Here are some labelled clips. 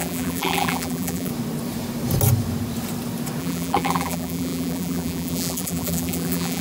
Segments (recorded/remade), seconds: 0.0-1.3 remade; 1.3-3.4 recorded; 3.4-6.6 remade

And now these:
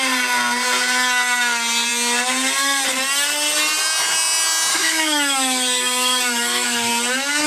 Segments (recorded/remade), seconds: 0.0-4.7 recorded; 4.7-6.9 remade; 6.9-7.5 recorded

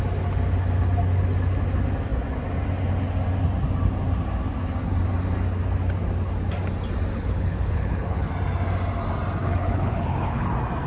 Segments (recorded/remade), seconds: 0.0-7.1 recorded; 7.1-8.3 remade; 8.3-9.4 recorded; 9.4-10.5 remade; 10.5-10.9 recorded

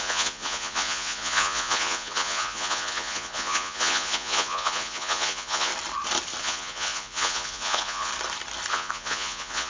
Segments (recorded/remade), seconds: 0.0-5.7 remade; 5.7-6.4 recorded; 6.4-8.1 remade; 8.1-8.7 recorded; 8.7-9.7 remade

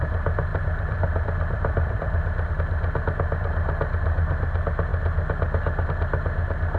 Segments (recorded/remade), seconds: 0.0-0.5 recorded; 0.5-2.5 remade; 2.5-6.8 recorded

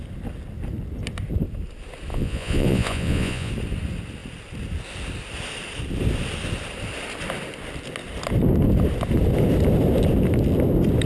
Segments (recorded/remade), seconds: 0.0-2.1 recorded; 2.1-3.5 remade; 3.5-11.1 recorded